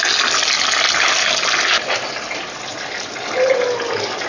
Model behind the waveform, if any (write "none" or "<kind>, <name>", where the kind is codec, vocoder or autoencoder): none